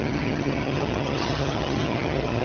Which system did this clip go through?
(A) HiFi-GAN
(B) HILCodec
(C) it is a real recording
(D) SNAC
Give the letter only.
A